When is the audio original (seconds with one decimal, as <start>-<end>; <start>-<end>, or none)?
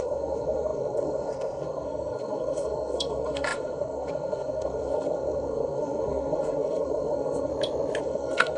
7.5-8.0